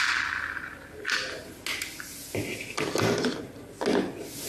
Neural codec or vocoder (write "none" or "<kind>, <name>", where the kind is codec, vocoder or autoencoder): none